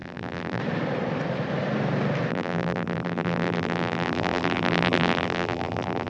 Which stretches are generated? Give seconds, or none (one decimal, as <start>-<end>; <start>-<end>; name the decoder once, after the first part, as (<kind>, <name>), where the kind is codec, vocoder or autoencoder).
0.0-0.6 (vocoder, BigVGAN v2); 2.3-6.1